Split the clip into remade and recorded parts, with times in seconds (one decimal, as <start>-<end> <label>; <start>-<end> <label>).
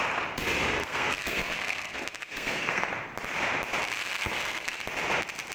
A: 0.0-0.8 recorded; 0.8-2.9 remade; 2.9-4.0 recorded; 4.0-4.8 remade; 4.8-5.5 recorded